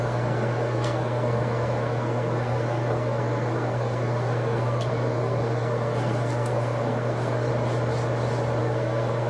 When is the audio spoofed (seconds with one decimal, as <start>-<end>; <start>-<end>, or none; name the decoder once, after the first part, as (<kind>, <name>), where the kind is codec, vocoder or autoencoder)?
0.0-7.5 (codec, SNAC); 8.6-9.3